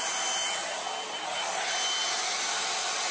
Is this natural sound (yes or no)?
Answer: yes